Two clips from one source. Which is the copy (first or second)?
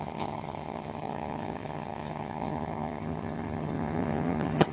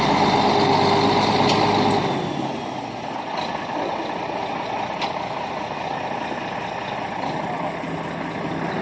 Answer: first